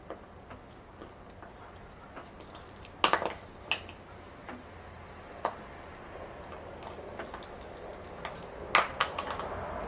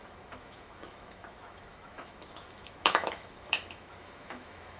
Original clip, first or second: first